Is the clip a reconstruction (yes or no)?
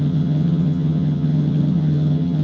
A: yes